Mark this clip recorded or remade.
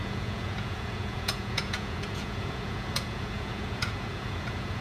remade